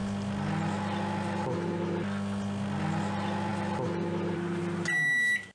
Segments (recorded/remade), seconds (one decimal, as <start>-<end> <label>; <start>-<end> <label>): 0.0-5.5 recorded